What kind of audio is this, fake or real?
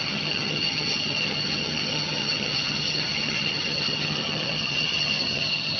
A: fake